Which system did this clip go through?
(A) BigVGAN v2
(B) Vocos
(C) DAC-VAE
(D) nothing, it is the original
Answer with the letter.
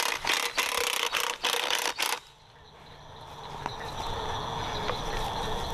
D